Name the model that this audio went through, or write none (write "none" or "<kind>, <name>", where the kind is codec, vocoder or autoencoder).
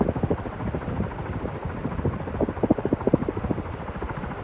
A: none